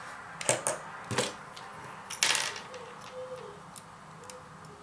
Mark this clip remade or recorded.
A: recorded